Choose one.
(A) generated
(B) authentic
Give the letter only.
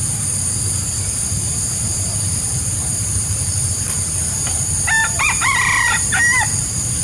A